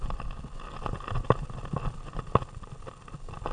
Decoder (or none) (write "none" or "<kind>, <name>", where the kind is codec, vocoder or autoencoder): none